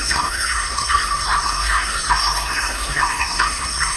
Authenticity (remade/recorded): remade